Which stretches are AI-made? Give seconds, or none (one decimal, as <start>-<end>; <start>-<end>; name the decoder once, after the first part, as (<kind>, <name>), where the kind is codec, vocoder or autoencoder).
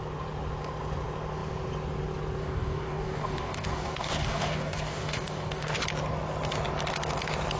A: 2.4-5.8 (codec, DAC)